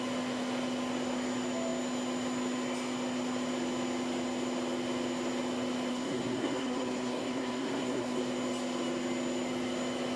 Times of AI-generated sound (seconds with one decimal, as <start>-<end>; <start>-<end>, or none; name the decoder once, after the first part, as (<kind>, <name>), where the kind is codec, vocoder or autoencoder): 5.9-8.2 (codec, SNAC)